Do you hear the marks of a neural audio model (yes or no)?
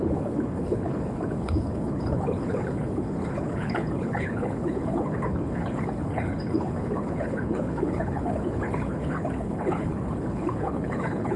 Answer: yes